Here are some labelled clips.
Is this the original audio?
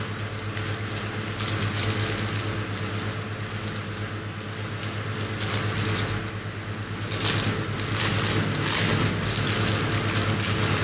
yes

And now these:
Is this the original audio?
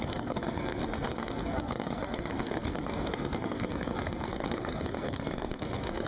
no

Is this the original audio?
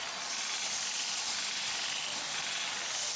yes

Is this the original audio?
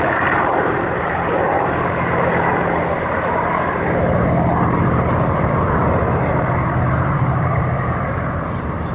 no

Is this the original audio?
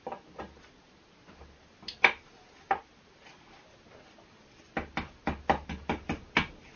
yes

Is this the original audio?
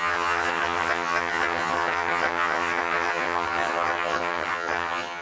no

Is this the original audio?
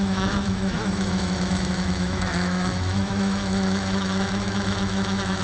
no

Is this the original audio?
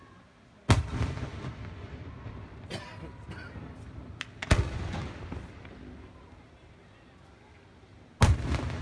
yes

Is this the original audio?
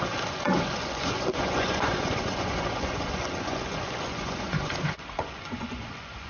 no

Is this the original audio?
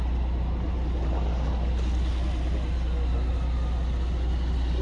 yes